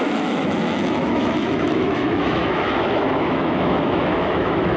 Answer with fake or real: fake